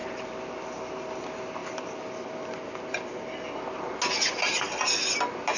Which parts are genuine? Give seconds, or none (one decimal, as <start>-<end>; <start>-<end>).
0.0-5.6